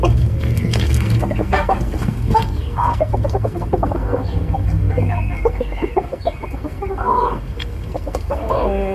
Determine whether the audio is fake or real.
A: fake